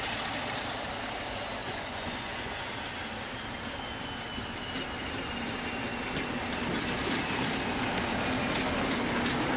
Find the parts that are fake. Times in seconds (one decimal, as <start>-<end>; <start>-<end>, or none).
1.6-2.7